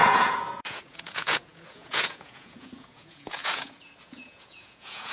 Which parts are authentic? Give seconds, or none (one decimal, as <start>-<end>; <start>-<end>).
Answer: none